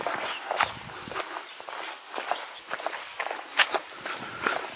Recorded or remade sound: recorded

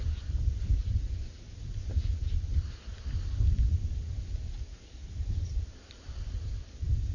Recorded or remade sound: recorded